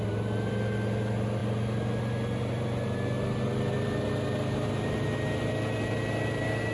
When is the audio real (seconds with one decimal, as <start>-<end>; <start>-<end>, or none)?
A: 0.0-6.7